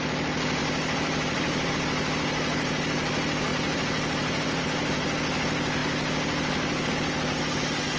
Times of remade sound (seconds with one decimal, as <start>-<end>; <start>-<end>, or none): 0.6-1.7; 3.5-4.6